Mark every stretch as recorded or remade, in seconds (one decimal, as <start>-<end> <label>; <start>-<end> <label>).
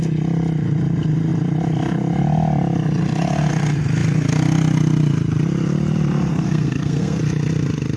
0.0-6.3 recorded; 6.3-7.2 remade; 7.2-8.0 recorded